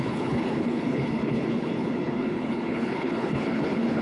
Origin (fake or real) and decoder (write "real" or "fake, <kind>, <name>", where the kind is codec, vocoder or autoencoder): fake, codec, HILCodec